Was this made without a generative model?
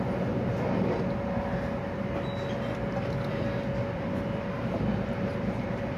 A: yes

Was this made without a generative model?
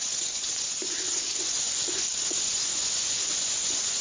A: no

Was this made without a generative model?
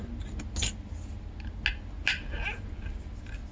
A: yes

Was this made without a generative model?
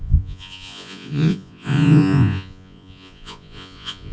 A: no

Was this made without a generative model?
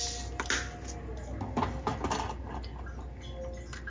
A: yes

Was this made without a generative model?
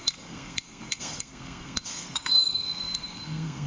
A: no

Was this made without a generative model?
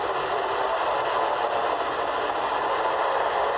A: yes